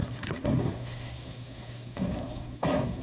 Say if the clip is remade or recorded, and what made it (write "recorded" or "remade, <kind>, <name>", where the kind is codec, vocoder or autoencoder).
remade, codec, SNAC